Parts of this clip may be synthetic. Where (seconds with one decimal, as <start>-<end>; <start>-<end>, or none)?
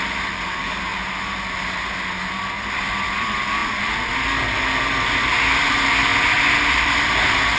6.1-7.0